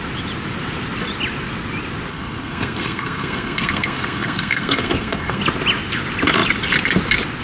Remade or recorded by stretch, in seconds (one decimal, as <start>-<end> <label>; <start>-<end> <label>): 0.0-2.1 recorded; 2.1-5.4 remade; 5.4-7.4 recorded